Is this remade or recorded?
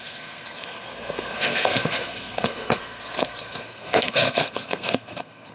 remade